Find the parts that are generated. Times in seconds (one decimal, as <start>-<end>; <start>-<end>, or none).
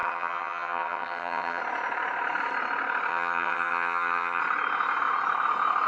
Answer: 0.0-1.6; 3.1-4.4